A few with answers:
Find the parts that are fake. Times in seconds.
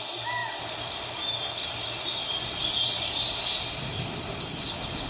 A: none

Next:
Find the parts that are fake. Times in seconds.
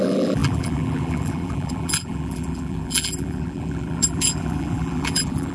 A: 0.0-5.5 (vocoder, BigVGAN v2)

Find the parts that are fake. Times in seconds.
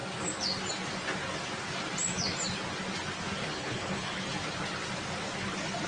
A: 3.5-4.2 (codec, HILCodec)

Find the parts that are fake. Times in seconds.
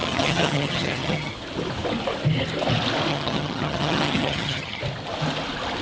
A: 0.0-1.3 (vocoder, HiFi-GAN); 3.1-4.8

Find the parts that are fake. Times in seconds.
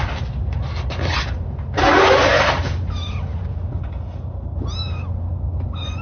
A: none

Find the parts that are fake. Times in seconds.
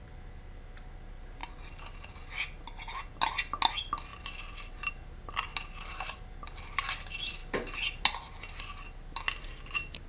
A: none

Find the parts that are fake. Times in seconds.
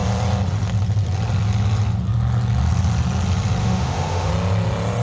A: 3.6-4.3 (autoencoder, DAC-VAE)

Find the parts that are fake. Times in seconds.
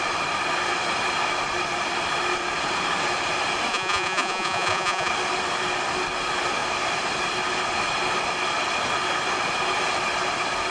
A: 3.7-5.1 (vocoder, Vocos)